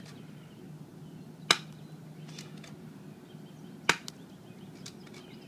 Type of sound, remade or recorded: recorded